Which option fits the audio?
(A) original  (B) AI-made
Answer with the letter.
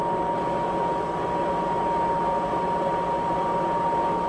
A